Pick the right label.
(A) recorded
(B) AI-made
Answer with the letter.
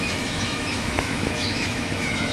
B